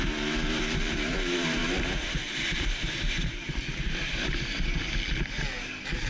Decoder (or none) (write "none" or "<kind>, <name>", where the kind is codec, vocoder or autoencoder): vocoder, BigVGAN v2